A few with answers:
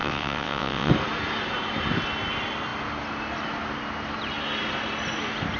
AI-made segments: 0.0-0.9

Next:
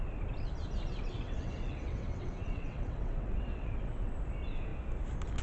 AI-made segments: 0.9-4.1

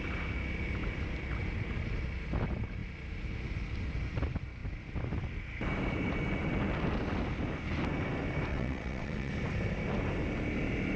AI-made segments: 8.5-9.3

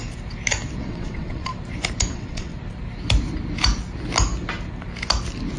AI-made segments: 0.8-1.5; 2.1-2.5